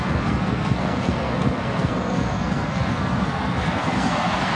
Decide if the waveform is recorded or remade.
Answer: remade